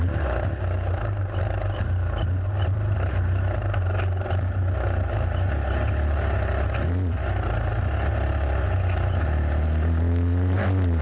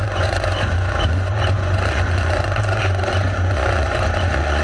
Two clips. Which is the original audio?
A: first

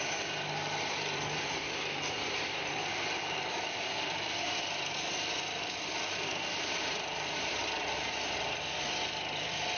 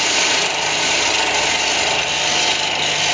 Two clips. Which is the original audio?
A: second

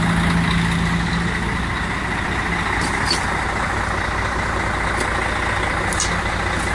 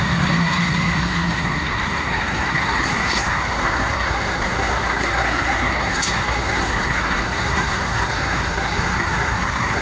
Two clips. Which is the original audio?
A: first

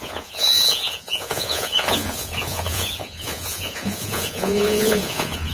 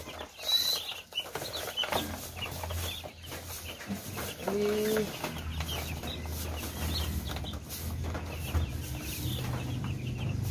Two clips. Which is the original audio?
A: second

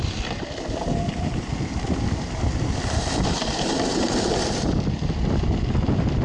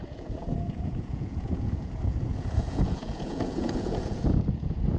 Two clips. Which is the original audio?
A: first